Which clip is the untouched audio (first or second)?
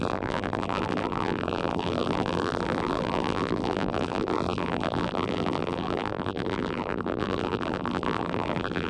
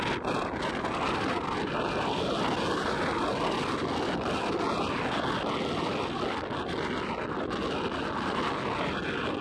second